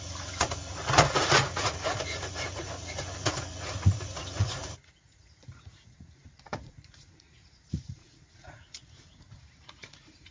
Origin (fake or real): fake